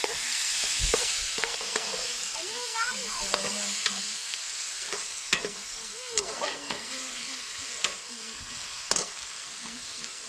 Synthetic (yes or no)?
yes